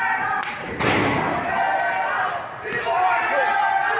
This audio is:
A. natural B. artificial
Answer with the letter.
A